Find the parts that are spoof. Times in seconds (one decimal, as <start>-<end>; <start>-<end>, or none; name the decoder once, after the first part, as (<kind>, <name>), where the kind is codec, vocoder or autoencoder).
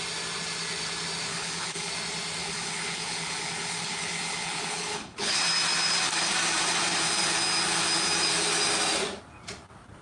1.3-1.9 (codec, HILCodec); 2.4-5.4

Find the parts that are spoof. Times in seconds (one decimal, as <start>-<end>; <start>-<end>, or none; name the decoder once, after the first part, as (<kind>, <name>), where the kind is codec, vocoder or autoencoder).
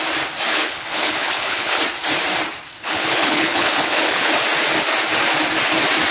0.5-1.8 (codec, HILCodec); 2.8-4.3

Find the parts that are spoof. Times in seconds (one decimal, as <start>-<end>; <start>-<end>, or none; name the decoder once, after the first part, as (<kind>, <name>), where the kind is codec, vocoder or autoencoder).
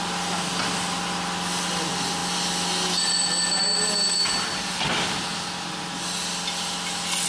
none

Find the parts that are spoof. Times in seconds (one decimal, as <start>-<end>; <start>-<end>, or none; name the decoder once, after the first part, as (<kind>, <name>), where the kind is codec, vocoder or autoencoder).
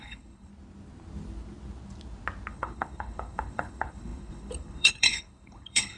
0.0-0.5 (codec, HILCodec); 2.5-6.0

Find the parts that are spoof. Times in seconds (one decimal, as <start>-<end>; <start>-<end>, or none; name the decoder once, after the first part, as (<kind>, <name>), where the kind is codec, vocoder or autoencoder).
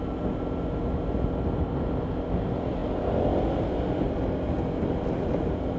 none